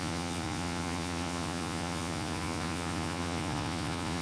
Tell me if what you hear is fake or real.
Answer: fake